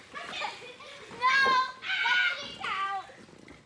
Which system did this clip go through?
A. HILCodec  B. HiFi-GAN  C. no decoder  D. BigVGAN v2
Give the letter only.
C